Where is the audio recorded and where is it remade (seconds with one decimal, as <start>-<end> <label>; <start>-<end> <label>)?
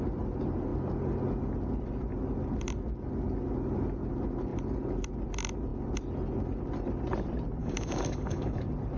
0.0-7.6 recorded; 7.6-8.6 remade; 8.6-9.0 recorded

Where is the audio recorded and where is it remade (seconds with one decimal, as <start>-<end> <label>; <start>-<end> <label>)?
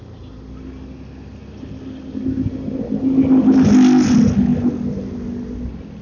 0.0-6.0 recorded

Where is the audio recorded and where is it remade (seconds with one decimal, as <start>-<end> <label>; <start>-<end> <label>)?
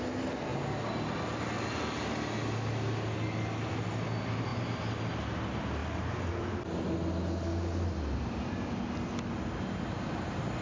0.0-10.6 recorded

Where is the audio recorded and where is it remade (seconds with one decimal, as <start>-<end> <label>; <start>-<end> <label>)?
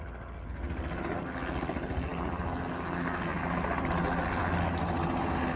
0.0-5.6 recorded